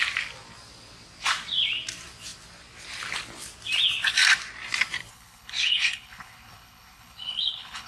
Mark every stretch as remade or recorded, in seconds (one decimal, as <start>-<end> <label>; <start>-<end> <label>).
0.0-5.1 recorded; 5.1-7.9 remade